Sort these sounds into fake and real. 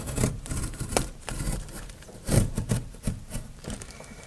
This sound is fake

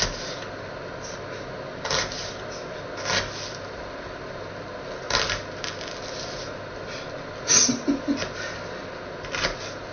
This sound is real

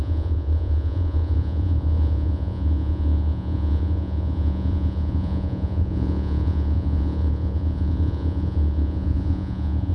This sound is fake